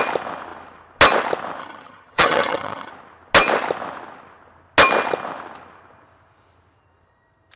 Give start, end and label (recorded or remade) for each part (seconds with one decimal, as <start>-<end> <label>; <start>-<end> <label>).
0.0-1.6 recorded; 1.6-2.9 remade; 2.9-7.6 recorded